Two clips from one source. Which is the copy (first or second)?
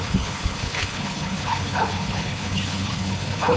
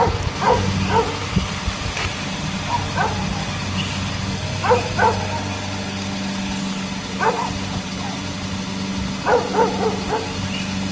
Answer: first